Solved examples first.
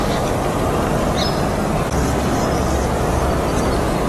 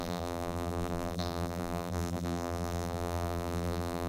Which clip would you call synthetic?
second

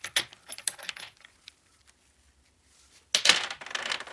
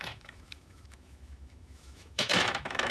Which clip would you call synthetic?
second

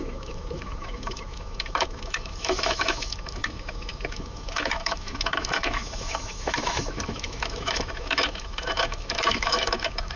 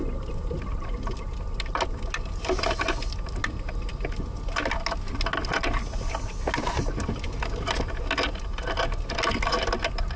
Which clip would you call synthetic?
first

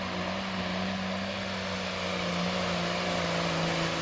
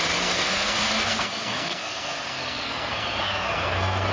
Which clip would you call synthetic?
second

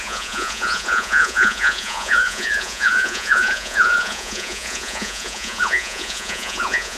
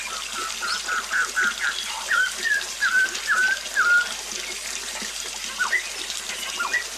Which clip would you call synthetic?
first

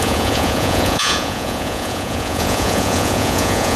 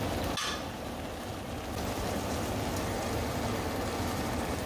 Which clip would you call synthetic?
first